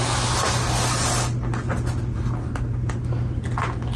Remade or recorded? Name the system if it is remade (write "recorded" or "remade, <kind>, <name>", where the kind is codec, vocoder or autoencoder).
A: recorded